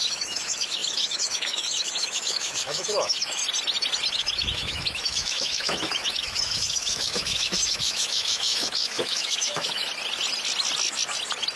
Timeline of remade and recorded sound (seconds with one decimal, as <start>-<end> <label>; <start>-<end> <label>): 0.0-3.4 remade; 3.4-4.1 recorded; 4.1-9.9 remade; 9.9-11.6 recorded